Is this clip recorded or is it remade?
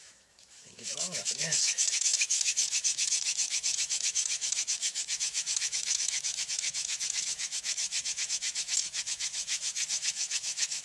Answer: remade